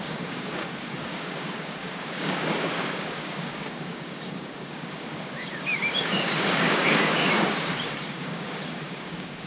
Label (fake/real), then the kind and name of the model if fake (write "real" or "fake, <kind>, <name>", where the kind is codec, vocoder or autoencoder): fake, codec, DAC